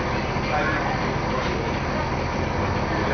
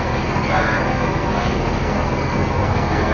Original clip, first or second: first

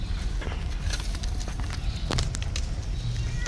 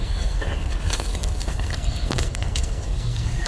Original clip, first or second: first